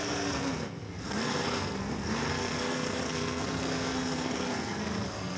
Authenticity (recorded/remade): remade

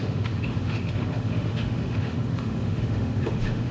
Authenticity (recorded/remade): remade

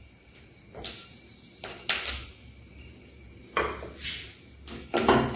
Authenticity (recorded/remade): recorded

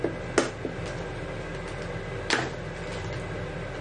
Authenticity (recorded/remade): recorded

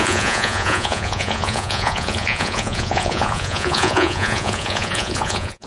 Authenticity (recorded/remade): remade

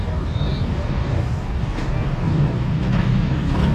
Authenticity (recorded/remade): remade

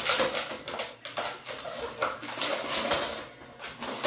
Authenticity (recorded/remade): recorded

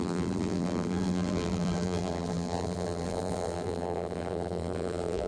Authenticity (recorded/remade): remade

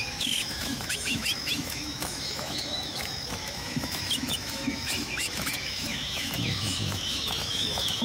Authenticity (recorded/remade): remade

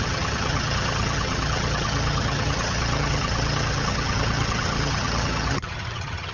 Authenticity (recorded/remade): remade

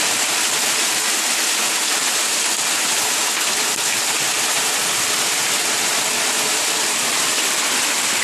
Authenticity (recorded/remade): recorded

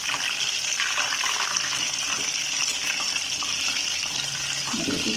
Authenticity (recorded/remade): recorded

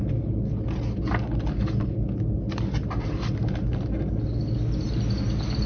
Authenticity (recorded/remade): recorded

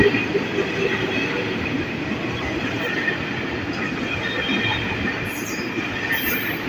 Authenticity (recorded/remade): recorded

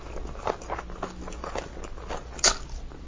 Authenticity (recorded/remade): recorded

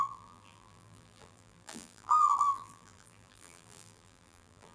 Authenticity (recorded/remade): remade